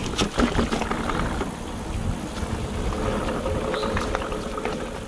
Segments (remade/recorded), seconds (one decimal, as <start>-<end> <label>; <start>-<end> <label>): 0.0-5.1 recorded